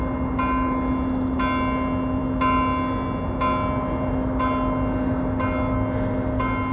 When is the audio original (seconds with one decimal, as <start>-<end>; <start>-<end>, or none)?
0.0-6.7